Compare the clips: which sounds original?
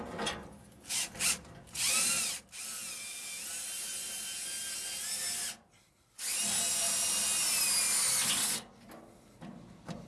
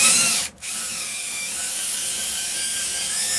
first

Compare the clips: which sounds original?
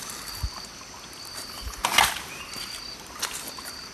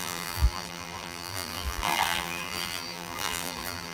first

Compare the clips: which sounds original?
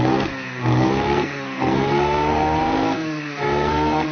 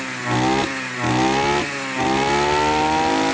second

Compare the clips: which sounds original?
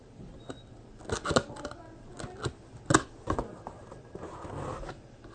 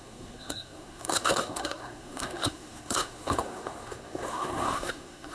first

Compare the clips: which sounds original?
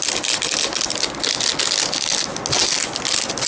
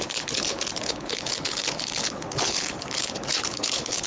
first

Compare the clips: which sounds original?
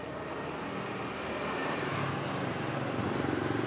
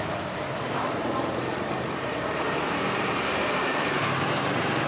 first